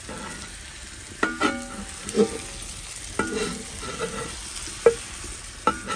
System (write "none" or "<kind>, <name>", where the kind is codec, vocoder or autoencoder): none